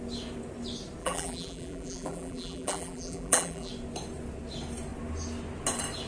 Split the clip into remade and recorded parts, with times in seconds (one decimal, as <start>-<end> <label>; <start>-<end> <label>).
0.0-1.0 recorded; 1.0-3.7 remade; 3.7-6.1 recorded